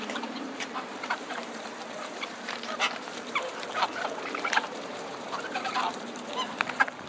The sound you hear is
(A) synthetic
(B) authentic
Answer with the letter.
A